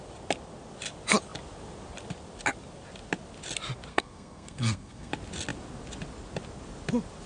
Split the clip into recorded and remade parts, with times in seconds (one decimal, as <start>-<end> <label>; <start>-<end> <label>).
0.0-3.9 recorded; 3.9-5.1 remade; 5.1-7.3 recorded